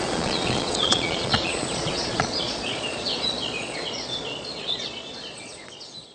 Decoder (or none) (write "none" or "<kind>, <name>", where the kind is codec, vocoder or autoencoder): vocoder, Vocos